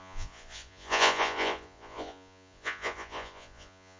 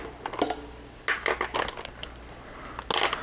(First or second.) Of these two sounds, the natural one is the second